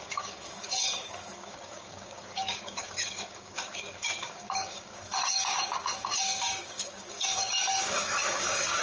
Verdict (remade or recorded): remade